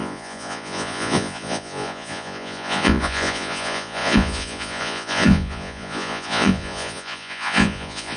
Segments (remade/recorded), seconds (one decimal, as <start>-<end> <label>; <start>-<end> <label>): 0.0-8.2 remade